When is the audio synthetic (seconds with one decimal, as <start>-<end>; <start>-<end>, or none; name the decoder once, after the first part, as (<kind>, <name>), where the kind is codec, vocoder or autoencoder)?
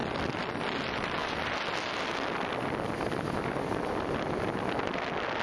none